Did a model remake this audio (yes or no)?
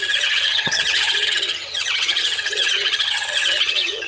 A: yes